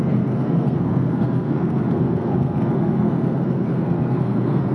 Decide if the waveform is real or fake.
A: fake